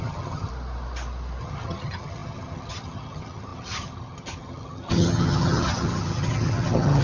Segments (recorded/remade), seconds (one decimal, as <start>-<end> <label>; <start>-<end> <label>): 0.0-0.5 remade; 0.5-1.4 recorded; 1.4-7.0 remade